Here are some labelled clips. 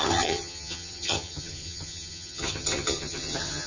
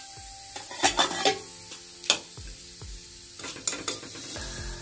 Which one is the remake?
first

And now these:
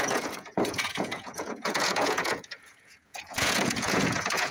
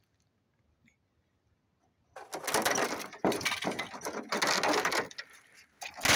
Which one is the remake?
first